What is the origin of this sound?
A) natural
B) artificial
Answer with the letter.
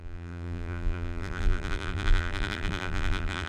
B